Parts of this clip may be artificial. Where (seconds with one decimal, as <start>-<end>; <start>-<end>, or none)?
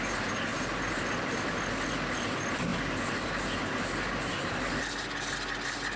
none